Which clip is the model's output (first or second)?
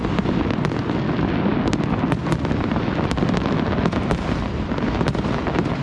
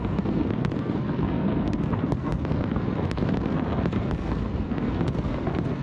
second